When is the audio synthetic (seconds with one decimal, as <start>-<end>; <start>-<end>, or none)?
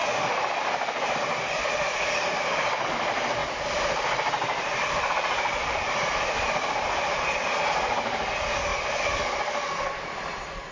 0.0-2.5; 3.4-7.7; 8.7-9.2